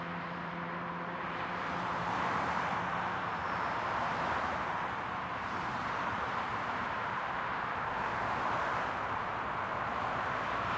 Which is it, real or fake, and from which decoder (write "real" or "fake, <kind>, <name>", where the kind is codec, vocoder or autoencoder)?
fake, vocoder, BigVGAN v2